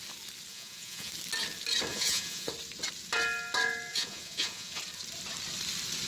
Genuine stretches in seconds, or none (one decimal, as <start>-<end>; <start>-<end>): 0.0-0.5; 1.1-1.9; 2.5-3.9; 4.8-6.1